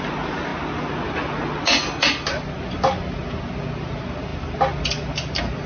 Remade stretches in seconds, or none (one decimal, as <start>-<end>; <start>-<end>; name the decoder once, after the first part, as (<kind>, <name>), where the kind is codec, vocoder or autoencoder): none